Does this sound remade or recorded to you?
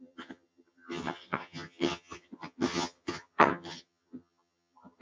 remade